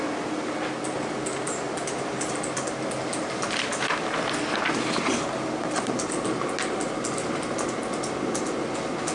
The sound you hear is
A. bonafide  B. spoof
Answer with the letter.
A